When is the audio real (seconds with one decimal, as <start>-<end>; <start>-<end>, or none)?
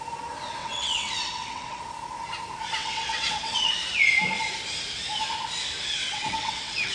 0.0-0.6; 1.8-2.8; 3.7-6.0